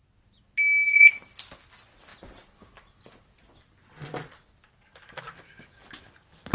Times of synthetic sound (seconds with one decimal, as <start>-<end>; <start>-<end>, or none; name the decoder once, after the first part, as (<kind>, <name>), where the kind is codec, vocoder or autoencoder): none